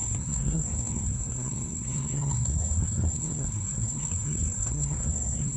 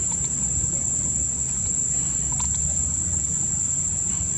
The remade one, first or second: first